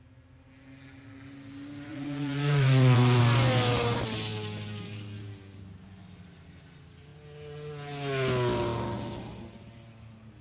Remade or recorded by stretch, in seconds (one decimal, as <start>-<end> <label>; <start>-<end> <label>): 0.0-1.9 recorded; 1.9-3.2 remade; 3.2-10.4 recorded

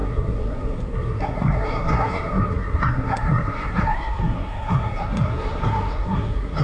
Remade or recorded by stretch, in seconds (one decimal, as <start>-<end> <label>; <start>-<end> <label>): 0.0-6.6 remade

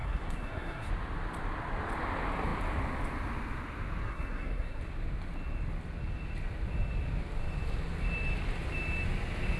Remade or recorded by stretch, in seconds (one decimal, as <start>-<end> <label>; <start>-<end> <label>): 0.0-0.9 remade; 0.9-4.0 recorded; 4.0-4.8 remade; 4.8-9.6 recorded

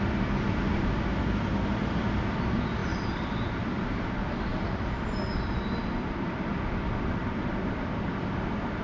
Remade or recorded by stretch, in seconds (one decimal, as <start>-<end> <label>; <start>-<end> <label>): 0.0-2.8 recorded; 2.8-3.5 remade; 3.5-4.5 recorded; 4.5-8.2 remade; 8.2-8.8 recorded